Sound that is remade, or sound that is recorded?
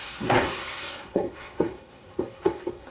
remade